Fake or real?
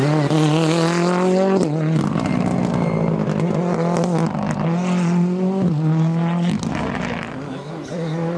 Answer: real